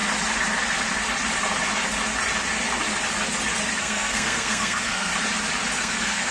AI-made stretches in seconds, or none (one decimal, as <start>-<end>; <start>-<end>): 3.8-5.1; 5.8-6.3